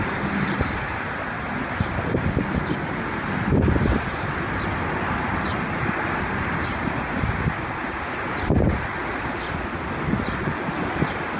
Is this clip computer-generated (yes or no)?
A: no